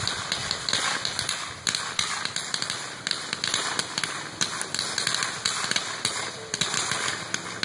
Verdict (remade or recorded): recorded